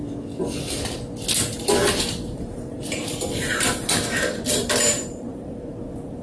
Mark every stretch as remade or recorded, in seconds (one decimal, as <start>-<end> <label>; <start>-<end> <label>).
0.0-1.9 recorded; 1.9-6.2 remade